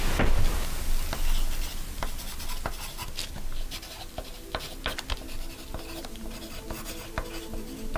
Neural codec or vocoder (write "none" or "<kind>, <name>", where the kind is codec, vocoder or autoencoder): none